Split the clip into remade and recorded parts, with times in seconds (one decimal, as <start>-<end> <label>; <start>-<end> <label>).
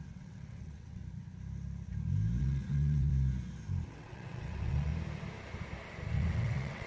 0.0-1.0 remade; 1.0-2.4 recorded; 2.4-3.1 remade; 3.1-3.9 recorded; 3.9-4.9 remade; 4.9-6.1 recorded; 6.1-6.9 remade